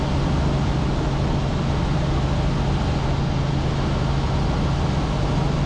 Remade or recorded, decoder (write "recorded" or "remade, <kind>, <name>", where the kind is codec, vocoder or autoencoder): recorded